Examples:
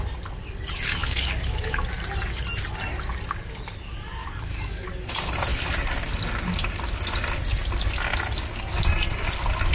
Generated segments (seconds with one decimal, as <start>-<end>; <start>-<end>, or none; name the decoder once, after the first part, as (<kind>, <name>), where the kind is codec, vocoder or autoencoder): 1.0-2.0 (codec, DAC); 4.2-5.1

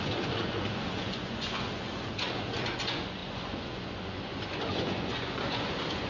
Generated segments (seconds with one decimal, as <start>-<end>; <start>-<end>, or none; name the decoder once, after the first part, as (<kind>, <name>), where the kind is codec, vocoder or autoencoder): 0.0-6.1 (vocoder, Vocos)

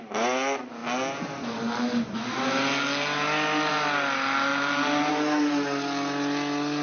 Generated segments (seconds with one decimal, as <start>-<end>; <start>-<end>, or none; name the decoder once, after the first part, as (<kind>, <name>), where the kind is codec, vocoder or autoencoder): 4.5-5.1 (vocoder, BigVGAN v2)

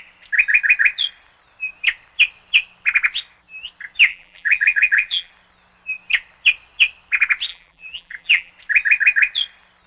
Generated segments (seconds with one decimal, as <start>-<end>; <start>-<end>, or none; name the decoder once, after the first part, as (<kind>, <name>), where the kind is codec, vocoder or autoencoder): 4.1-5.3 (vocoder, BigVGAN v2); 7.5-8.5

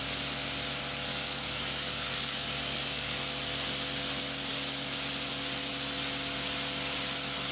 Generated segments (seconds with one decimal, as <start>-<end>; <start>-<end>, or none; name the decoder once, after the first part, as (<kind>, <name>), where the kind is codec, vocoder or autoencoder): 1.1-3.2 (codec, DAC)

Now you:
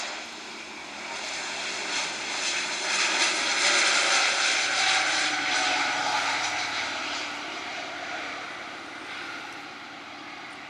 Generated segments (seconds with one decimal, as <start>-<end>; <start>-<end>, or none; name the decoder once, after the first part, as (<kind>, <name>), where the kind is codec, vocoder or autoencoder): 0.0-6.0 (vocoder, BigVGAN v2); 7.0-10.7